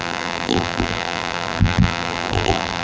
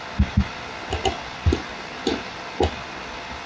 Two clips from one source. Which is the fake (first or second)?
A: first